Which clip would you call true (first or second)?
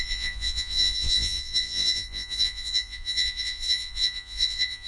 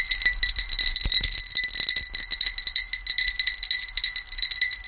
second